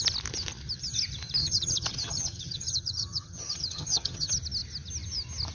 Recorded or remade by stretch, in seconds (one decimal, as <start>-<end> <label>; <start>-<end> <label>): 0.0-1.4 recorded; 1.4-4.3 remade; 4.3-5.5 recorded